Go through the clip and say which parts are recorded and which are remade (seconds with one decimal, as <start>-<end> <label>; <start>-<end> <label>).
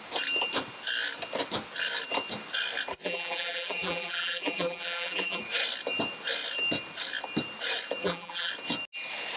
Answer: 0.0-2.9 recorded; 2.9-5.4 remade; 5.4-8.0 recorded; 8.0-8.5 remade; 8.5-9.4 recorded